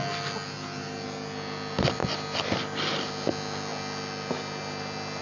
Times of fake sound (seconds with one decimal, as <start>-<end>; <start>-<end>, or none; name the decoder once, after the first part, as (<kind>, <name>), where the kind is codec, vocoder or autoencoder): none